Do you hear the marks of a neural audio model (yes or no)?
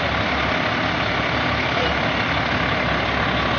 no